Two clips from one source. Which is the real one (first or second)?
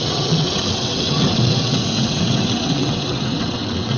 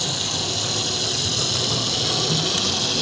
second